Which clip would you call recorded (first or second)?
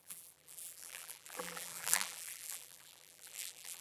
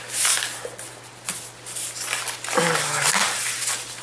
second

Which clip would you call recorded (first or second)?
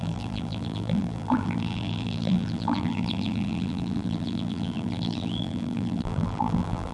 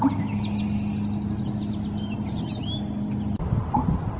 second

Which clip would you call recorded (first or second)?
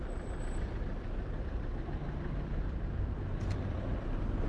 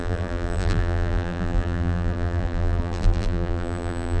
first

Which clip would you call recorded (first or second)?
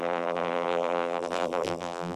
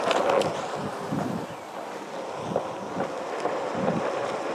second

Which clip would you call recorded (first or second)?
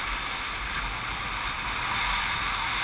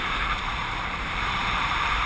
first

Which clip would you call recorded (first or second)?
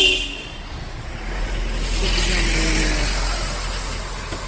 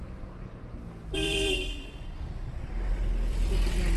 first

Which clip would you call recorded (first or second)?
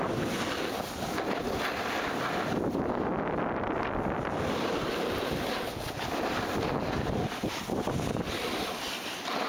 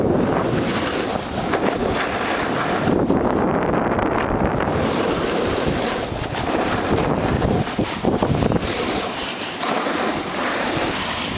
first